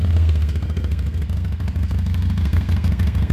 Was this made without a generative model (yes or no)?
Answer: no